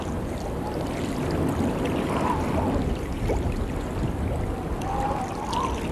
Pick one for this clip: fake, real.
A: real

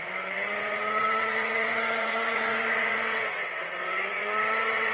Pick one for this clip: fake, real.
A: fake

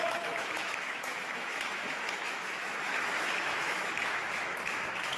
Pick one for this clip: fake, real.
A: fake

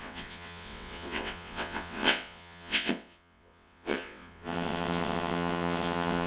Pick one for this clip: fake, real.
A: fake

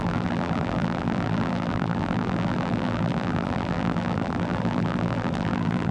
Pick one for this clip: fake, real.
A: fake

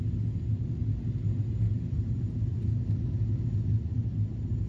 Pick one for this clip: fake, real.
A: real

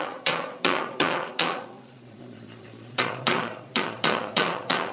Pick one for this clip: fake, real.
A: fake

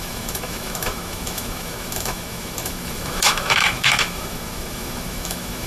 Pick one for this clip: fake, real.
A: fake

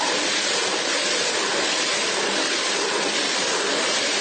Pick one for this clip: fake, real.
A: real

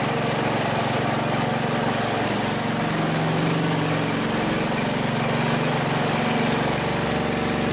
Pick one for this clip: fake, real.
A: real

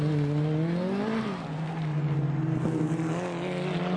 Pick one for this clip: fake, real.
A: real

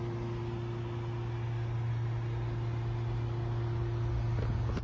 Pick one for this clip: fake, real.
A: real